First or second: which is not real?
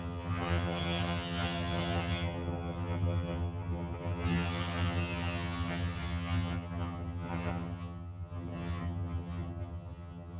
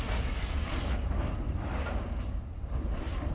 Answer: first